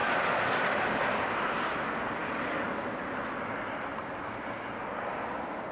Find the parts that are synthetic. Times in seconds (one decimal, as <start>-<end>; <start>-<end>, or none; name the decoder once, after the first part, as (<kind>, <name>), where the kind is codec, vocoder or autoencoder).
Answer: none